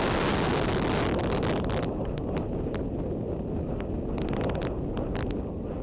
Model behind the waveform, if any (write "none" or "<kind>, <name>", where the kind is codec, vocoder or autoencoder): none